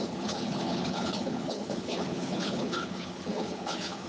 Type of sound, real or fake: fake